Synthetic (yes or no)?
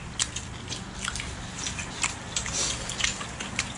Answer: no